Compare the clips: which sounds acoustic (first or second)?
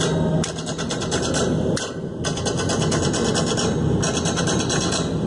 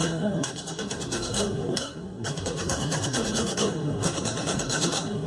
first